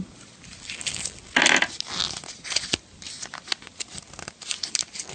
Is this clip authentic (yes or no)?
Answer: yes